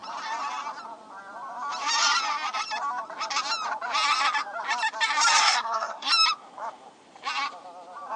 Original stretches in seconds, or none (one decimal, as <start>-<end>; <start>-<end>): 0.0-5.4; 6.1-8.2